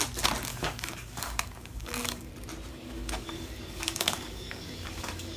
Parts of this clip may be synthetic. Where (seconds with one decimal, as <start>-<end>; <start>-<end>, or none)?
0.5-2.3; 2.7-5.4